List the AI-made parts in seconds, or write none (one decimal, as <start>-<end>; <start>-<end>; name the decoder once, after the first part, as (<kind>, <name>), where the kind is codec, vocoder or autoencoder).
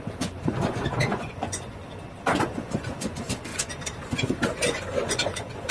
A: 0.0-1.8 (vocoder, Vocos); 2.4-5.7